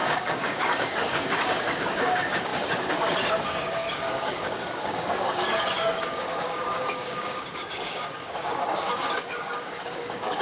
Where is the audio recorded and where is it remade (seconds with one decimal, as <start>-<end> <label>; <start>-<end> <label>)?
0.0-10.4 remade